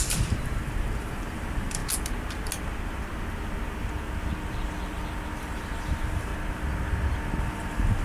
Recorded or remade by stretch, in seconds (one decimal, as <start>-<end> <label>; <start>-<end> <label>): 0.0-1.8 remade; 1.8-5.4 recorded; 5.4-6.3 remade; 6.3-7.4 recorded; 7.4-8.0 remade